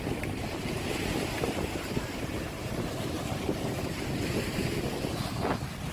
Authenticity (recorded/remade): recorded